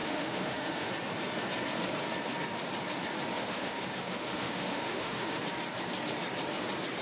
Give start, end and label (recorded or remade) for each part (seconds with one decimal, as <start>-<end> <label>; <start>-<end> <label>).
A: 0.0-0.9 remade; 0.9-3.3 recorded; 3.3-5.4 remade; 5.4-7.0 recorded